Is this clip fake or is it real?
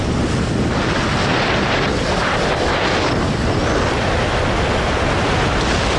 real